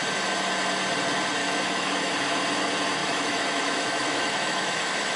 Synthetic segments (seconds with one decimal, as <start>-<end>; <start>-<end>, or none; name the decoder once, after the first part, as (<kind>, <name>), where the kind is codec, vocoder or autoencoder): 1.4-2.1 (autoencoder, DAC-VAE); 3.0-5.2